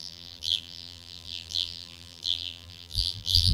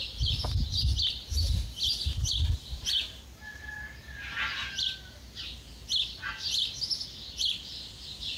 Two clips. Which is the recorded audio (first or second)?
second